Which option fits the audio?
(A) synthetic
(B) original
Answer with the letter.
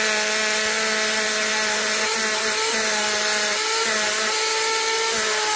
B